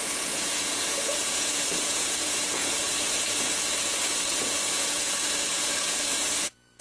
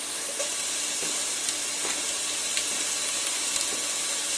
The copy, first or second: first